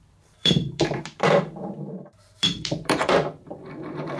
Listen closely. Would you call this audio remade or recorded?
remade